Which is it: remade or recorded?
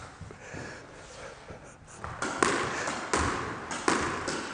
recorded